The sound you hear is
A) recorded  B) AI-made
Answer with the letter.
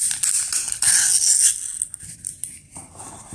A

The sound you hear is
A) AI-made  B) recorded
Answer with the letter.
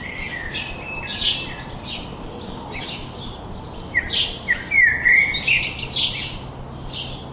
B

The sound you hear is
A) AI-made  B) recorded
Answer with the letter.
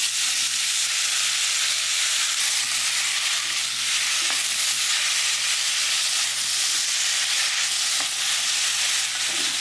B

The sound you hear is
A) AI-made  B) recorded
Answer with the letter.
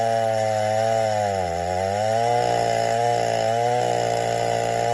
B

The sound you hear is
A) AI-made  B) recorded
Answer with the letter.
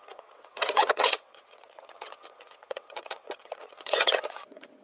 A